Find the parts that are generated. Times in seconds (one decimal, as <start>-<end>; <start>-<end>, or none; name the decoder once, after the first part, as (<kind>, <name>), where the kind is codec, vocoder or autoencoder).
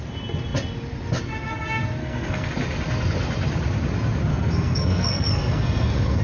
2.0-2.5 (codec, SNAC); 4.3-6.2